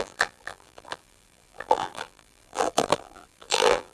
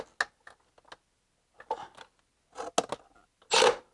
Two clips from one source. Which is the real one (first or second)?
second